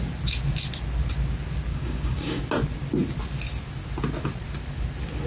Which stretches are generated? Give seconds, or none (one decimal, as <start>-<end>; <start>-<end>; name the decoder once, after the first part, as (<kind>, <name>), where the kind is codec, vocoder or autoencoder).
1.7-2.4 (codec, DAC)